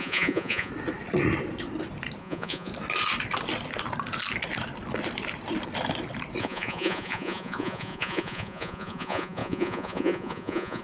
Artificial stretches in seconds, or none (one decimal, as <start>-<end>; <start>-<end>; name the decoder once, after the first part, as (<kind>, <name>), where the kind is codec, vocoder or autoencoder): 0.0-0.7 (vocoder, Vocos); 2.2-2.7; 6.4-10.8